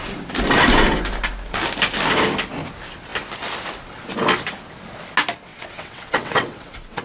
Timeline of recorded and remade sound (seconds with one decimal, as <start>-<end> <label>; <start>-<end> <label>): 0.0-5.5 recorded; 5.5-7.0 remade

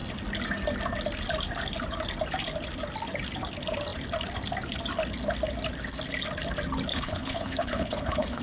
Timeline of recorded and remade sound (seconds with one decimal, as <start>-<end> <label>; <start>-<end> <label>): 0.0-6.9 recorded; 6.9-8.4 remade

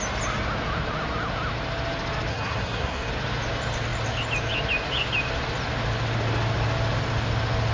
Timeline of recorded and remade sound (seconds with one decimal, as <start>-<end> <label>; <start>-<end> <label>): 0.0-2.3 recorded; 2.3-3.1 remade; 3.1-7.7 recorded

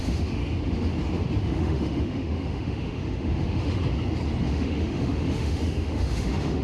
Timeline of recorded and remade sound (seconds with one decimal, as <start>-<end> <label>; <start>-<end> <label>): 0.0-0.4 remade; 0.4-1.4 recorded; 1.4-3.8 remade; 3.8-4.4 recorded; 4.4-6.6 remade